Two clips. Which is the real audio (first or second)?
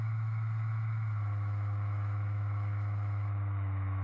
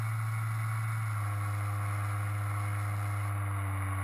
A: second